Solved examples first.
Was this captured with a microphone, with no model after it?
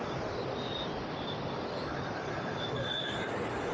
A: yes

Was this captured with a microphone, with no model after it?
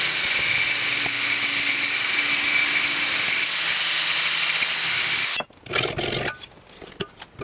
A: yes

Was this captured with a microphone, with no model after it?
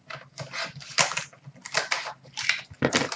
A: yes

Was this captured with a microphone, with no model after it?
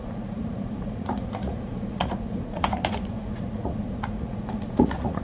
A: no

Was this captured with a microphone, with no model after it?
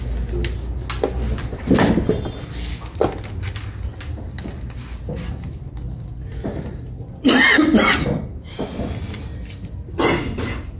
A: yes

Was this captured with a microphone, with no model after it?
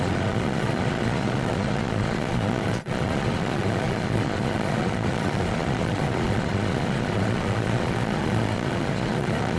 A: no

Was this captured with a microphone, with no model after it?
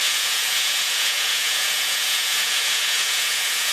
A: no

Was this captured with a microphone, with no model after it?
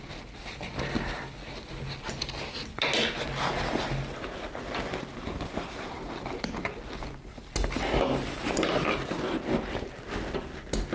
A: yes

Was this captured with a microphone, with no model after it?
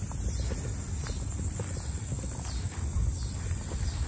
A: yes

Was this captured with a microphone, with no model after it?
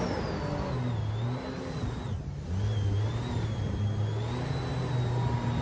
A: yes